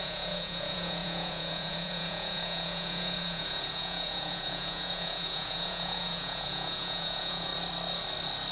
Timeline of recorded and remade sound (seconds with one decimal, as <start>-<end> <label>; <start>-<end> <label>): 0.0-7.5 remade; 7.5-8.5 recorded